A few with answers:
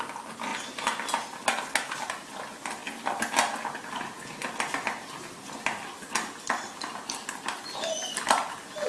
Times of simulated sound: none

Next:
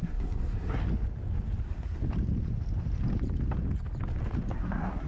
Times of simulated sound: 0.0-0.8; 1.6-2.0; 4.5-5.1

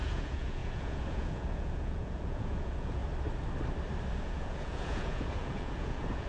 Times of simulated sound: 0.0-3.0; 4.2-6.3

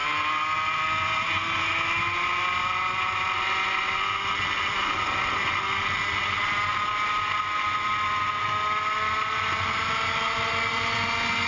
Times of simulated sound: none